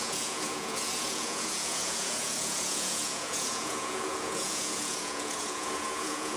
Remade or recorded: remade